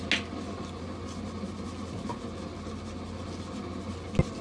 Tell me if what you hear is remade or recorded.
recorded